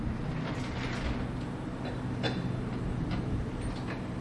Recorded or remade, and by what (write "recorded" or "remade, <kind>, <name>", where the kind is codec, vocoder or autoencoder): recorded